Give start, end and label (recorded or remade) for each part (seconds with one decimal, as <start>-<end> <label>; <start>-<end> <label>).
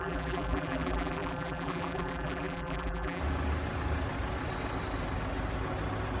0.0-3.2 remade; 3.2-6.2 recorded